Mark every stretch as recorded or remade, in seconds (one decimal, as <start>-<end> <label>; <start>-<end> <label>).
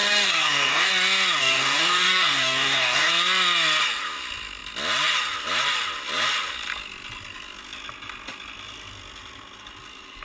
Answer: 0.0-0.9 remade; 0.9-1.4 recorded; 1.4-3.1 remade; 3.1-10.2 recorded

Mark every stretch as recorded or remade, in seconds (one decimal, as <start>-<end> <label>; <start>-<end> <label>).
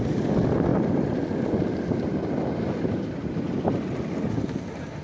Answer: 0.0-5.0 recorded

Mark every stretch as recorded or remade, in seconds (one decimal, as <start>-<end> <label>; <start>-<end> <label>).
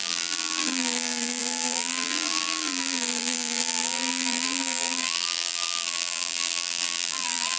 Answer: 0.0-7.6 remade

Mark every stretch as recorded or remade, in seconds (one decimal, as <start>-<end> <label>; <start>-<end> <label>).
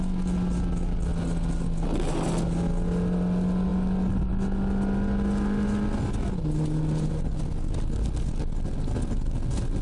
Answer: 0.0-9.8 recorded